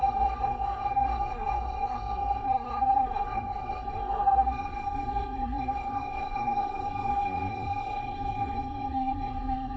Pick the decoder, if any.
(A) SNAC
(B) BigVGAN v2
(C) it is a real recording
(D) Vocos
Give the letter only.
A